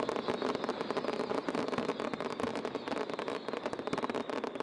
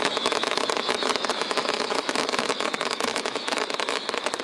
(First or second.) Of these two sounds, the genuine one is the first